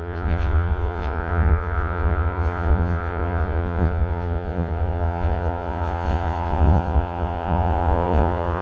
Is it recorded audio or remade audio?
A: remade